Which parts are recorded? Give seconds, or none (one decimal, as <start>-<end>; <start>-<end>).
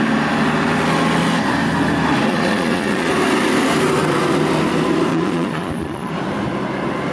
0.0-2.3; 3.1-5.1; 6.1-7.1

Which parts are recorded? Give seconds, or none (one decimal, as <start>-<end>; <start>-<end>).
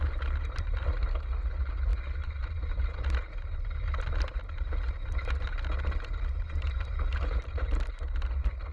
0.0-8.7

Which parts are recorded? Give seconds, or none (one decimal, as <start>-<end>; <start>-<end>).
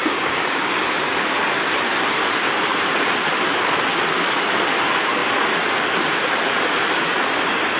0.8-7.8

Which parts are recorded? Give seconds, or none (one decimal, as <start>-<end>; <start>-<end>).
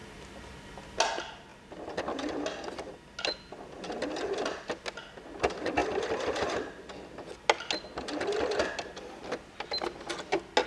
0.0-10.7